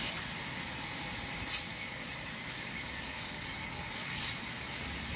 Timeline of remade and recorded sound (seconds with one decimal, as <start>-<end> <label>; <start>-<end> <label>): 0.0-1.7 recorded; 1.7-4.8 remade; 4.8-5.2 recorded